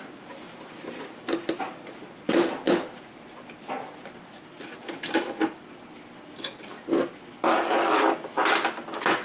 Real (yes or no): yes